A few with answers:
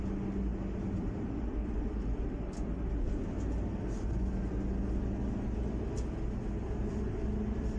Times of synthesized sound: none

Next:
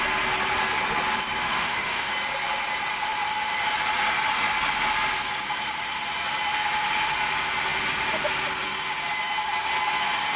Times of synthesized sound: 1.4-2.1 (autoencoder, DAC-VAE)

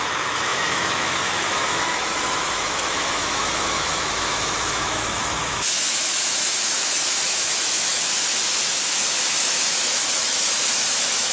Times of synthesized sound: 0.0-11.3 (autoencoder, DAC-VAE)